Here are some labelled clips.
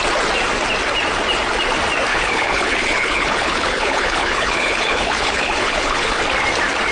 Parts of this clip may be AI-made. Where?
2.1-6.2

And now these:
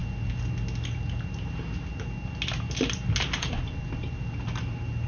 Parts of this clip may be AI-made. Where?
none

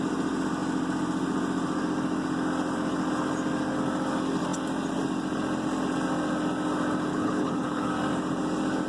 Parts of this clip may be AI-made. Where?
7.1-7.9

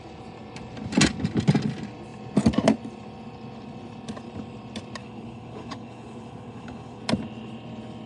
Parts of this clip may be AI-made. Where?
5.0-7.0

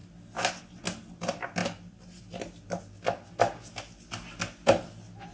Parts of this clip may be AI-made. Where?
none

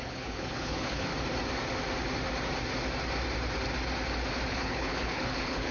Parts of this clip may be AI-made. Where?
0.0-1.1; 4.5-5.7

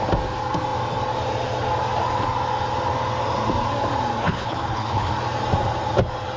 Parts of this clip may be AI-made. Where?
4.2-5.1